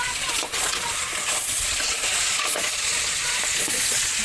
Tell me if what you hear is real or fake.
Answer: fake